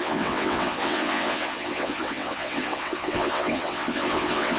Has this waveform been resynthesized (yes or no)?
yes